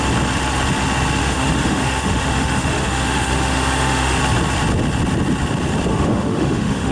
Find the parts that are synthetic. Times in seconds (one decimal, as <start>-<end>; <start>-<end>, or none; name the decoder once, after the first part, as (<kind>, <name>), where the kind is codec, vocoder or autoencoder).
1.2-4.2 (autoencoder, DAC-VAE); 5.9-6.9